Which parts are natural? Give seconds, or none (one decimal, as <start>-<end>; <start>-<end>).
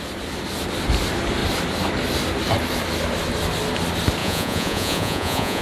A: 0.0-4.2